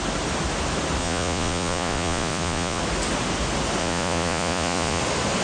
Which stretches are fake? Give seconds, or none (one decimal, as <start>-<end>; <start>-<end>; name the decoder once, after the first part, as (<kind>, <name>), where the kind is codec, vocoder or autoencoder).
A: 1.0-2.8 (vocoder, Vocos); 3.8-5.0